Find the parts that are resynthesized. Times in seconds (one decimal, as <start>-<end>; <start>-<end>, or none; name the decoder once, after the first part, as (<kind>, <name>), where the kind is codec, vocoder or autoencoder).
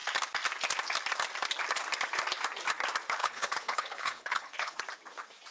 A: 3.2-4.8 (codec, HILCodec)